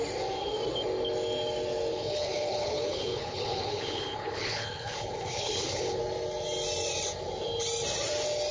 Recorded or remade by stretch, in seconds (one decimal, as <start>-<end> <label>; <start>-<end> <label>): 0.0-1.9 recorded; 1.9-6.0 remade; 6.0-8.5 recorded